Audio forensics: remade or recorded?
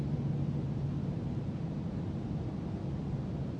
recorded